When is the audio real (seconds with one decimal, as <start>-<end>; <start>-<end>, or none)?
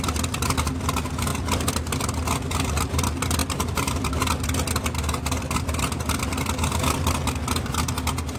0.0-1.3; 2.4-3.4; 4.1-8.4